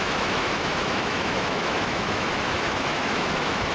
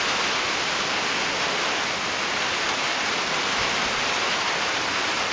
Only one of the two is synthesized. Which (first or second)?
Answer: first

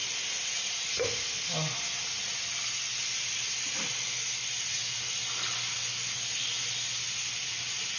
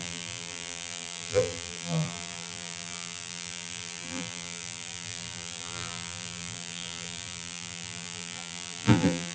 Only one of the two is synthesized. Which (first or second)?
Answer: second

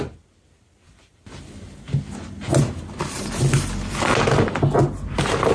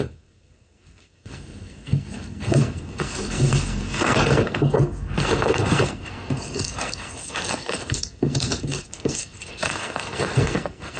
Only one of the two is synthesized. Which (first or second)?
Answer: second